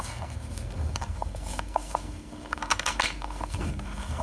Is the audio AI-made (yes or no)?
yes